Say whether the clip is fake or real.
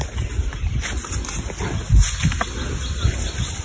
real